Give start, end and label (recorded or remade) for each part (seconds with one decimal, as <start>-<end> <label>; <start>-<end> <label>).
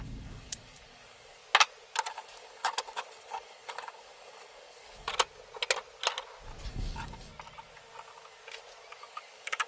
0.0-1.4 remade; 1.4-2.1 recorded; 2.1-5.1 remade; 5.1-6.7 recorded; 6.7-7.3 remade; 7.3-9.0 recorded; 9.0-9.7 remade